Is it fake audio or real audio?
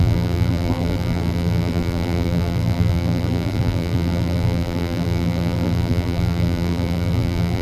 fake